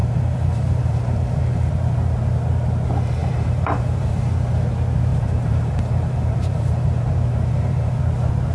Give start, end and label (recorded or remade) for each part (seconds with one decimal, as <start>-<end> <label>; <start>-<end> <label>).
0.0-1.7 remade; 1.7-3.2 recorded; 3.2-4.3 remade; 4.3-5.1 recorded; 5.1-8.0 remade; 8.0-8.5 recorded